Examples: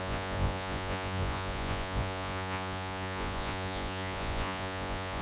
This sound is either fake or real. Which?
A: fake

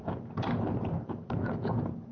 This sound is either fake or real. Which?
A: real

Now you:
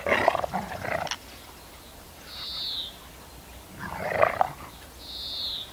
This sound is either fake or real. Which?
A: real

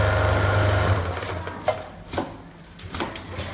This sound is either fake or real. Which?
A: real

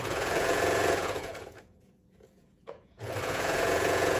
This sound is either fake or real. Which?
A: fake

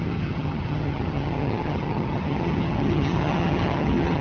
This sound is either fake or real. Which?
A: fake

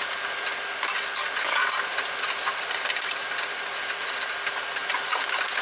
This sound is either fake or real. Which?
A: real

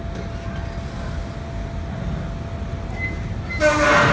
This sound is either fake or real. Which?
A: real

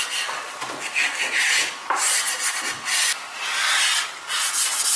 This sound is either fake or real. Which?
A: real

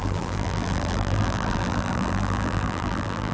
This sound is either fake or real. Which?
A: fake